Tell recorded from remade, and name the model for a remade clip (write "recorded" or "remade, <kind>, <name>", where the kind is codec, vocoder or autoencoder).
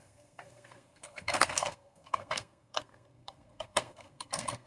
remade, codec, SNAC